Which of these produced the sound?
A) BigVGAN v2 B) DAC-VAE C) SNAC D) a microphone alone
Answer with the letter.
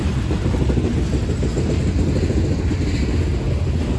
D